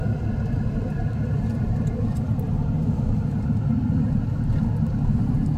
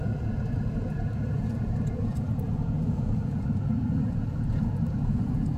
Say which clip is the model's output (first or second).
second